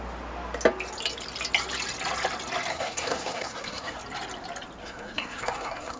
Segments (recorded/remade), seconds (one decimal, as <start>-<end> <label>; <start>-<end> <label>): 0.0-2.7 recorded; 2.7-4.0 remade; 4.0-4.8 recorded; 4.8-6.0 remade